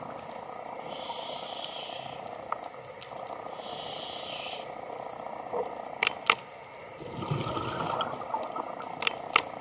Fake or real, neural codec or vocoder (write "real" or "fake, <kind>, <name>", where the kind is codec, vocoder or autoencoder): real